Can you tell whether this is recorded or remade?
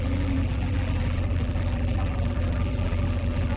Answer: remade